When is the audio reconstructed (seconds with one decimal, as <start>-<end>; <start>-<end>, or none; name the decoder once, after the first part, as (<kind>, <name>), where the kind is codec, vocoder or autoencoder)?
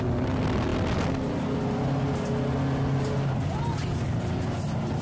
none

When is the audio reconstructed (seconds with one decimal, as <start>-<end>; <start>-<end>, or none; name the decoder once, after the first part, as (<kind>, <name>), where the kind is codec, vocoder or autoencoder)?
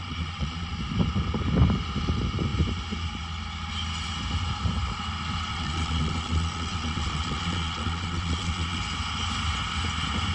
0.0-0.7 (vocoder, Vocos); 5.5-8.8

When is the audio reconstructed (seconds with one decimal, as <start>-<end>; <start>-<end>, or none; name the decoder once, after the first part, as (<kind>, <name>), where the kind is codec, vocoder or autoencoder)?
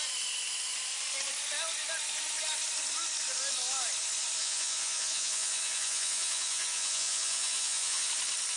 4.4-8.1 (vocoder, Vocos)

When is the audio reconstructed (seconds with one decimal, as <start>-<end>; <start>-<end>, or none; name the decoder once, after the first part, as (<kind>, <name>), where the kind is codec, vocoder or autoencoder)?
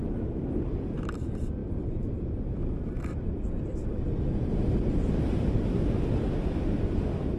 none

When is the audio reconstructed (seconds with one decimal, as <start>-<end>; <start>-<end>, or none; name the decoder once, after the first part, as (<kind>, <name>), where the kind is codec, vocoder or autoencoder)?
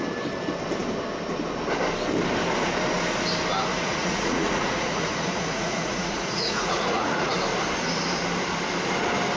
3.7-7.3 (vocoder, Vocos)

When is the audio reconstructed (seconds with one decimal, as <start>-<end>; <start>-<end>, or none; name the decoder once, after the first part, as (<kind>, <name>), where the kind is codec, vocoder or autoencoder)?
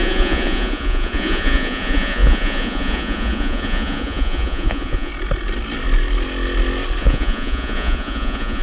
0.0-5.1 (vocoder, Vocos); 7.0-8.6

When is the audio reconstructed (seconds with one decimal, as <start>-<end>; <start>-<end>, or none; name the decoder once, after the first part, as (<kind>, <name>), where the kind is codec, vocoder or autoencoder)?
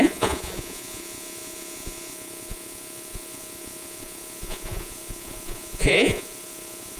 0.0-7.0 (vocoder, Vocos)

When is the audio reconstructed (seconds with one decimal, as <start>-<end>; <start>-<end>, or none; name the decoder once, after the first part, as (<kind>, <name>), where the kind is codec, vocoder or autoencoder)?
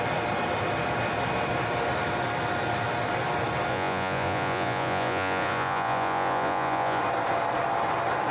3.7-7.0 (vocoder, Vocos)